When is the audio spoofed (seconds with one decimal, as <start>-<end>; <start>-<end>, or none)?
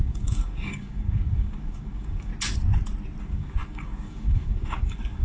0.0-2.3; 3.2-5.2